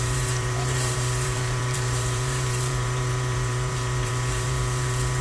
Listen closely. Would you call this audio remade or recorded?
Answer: remade